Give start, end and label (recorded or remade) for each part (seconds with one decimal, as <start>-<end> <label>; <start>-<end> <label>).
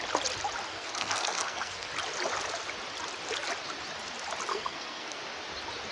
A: 0.0-0.7 recorded; 0.7-1.9 remade; 1.9-4.5 recorded; 4.5-5.2 remade; 5.2-5.9 recorded